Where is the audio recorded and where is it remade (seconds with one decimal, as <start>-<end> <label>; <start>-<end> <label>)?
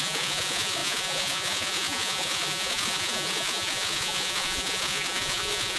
0.0-5.8 remade